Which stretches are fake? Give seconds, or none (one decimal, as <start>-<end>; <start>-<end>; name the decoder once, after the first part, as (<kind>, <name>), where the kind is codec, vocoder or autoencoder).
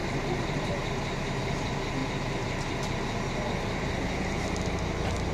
none